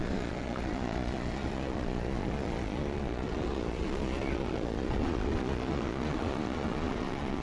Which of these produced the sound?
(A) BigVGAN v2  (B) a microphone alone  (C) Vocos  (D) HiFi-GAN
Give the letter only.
C